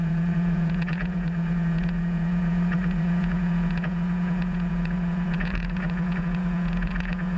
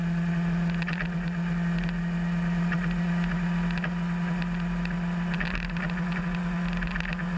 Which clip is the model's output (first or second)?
first